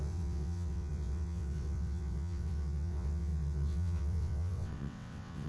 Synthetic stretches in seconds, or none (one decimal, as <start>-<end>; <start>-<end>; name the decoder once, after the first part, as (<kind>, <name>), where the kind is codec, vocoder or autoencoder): 0.0-5.5 (vocoder, WaveNeXt)